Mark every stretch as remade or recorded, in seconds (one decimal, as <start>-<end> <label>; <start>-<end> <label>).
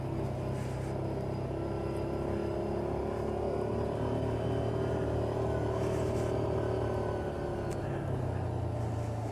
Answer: 0.0-9.3 recorded